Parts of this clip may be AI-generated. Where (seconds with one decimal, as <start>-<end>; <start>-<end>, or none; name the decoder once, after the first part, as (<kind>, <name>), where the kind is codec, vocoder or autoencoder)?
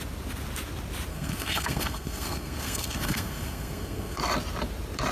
1.1-4.2 (codec, SNAC)